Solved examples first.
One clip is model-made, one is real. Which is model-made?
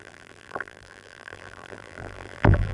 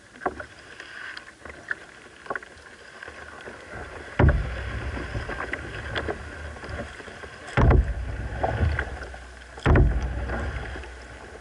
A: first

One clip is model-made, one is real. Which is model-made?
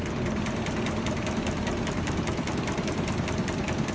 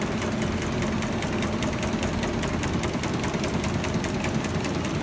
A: first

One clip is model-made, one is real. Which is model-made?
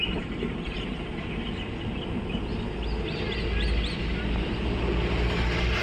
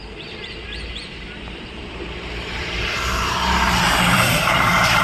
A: second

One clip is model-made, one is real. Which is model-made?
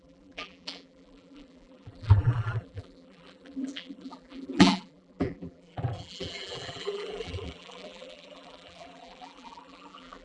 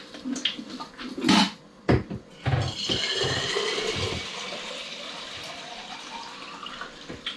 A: first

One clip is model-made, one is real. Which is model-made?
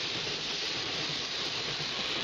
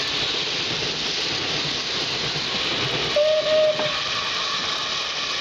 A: first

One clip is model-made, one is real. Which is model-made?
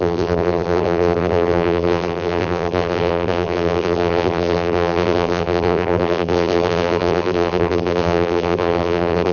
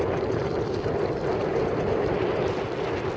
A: first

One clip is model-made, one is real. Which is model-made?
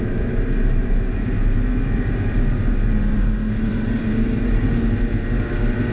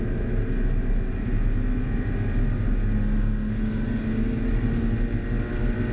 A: first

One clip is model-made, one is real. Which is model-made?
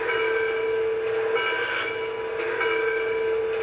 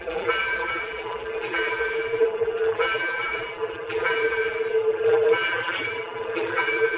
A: second